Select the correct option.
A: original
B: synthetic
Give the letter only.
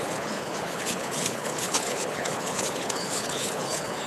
B